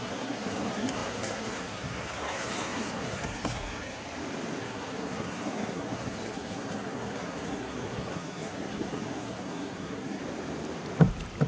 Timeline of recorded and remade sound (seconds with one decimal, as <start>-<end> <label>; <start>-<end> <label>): 0.0-4.0 remade; 4.0-4.6 recorded; 4.6-10.2 remade; 10.2-11.5 recorded